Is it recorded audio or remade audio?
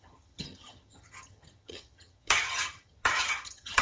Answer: remade